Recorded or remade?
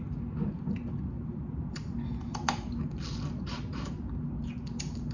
recorded